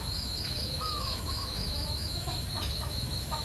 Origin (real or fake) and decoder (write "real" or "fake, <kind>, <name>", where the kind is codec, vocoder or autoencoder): fake, autoencoder, DAC-VAE